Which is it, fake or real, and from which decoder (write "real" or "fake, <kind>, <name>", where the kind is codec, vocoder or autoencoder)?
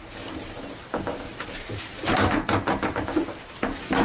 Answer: fake, vocoder, BigVGAN v2